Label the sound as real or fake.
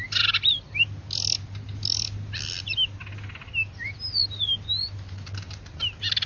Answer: real